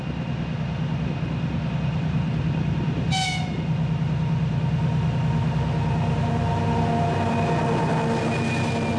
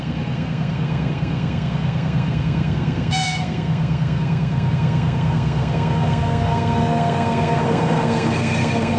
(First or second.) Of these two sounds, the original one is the first